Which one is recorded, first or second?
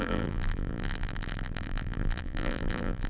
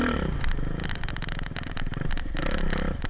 second